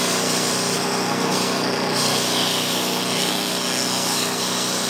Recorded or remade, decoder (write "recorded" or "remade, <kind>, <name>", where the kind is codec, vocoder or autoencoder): remade, codec, SNAC